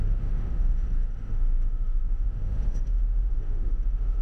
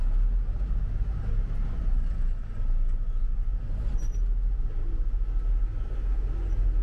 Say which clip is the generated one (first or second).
first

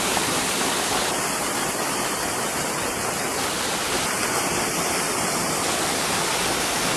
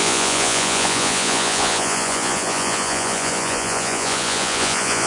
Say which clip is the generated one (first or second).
second